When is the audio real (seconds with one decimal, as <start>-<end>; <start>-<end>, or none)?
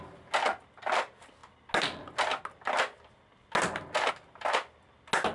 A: 0.0-5.3